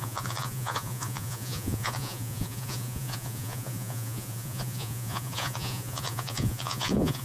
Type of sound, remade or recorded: remade